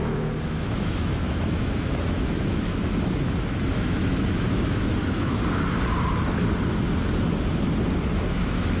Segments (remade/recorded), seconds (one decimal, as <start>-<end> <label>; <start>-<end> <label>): 0.0-5.4 remade; 5.4-8.3 recorded; 8.3-8.8 remade